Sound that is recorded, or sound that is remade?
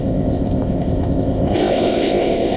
remade